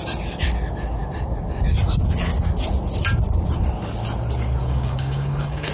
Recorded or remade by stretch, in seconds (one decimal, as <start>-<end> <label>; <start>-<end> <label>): 0.0-4.6 recorded; 4.6-5.7 remade